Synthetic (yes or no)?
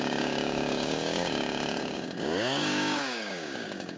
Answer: yes